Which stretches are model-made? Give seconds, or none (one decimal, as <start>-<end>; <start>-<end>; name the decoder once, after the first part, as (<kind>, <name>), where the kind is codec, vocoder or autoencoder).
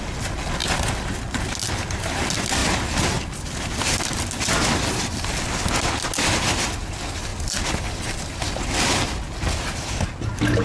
none